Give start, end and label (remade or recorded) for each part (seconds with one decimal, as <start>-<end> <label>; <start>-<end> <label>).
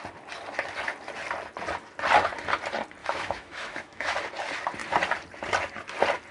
0.0-3.0 recorded; 3.0-4.1 remade; 4.1-6.3 recorded